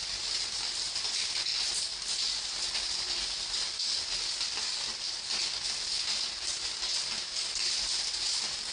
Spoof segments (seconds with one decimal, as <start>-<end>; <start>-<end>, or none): none